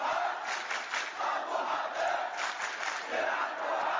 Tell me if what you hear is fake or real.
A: real